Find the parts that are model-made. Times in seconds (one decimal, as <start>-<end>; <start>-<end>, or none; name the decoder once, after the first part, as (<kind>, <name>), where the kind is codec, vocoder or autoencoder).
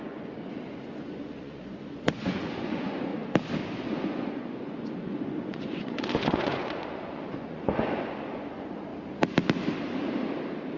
0.0-3.1 (vocoder, Vocos); 3.9-8.9